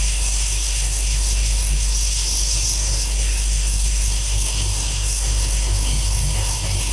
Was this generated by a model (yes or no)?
yes